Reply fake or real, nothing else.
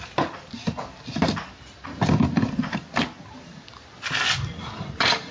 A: real